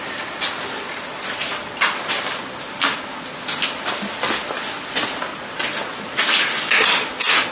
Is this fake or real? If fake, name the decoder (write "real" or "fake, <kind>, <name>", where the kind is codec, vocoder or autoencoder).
real